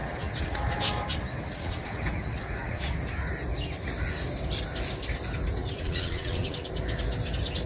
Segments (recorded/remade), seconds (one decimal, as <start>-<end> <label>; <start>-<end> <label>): 0.0-1.0 remade; 1.0-1.5 recorded; 1.5-2.8 remade; 2.8-5.6 recorded; 5.6-6.7 remade; 6.7-7.7 recorded